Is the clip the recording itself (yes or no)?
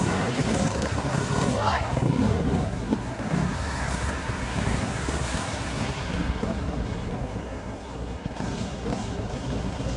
no